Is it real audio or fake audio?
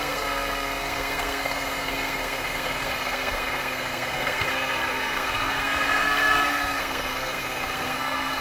fake